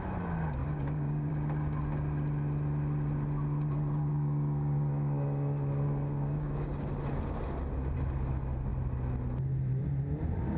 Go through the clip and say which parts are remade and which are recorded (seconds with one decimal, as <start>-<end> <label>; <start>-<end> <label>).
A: 0.0-0.6 recorded; 0.6-1.3 remade; 1.3-4.1 recorded; 4.1-6.7 remade; 6.7-10.6 recorded